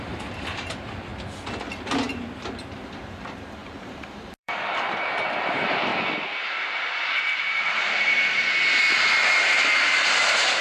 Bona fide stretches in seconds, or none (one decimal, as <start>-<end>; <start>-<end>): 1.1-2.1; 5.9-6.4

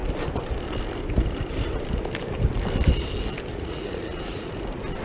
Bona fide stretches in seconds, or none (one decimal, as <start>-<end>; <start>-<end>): 0.0-3.5; 4.5-5.0

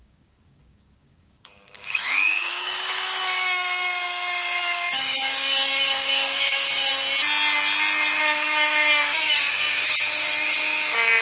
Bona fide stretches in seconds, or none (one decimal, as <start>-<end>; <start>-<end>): 6.9-8.2

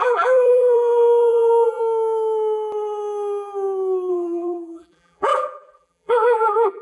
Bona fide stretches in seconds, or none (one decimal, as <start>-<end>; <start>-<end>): 1.8-4.1

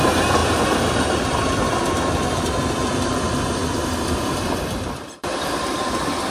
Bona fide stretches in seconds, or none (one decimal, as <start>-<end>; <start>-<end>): 0.0-0.4; 2.4-3.6

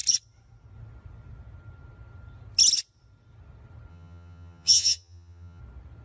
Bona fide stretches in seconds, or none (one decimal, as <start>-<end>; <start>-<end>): 0.0-3.9; 5.6-6.0

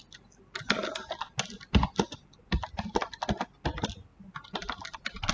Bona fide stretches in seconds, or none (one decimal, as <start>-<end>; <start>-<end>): 0.0-5.3